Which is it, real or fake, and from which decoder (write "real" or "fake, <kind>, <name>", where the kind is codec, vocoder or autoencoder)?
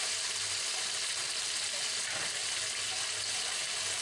real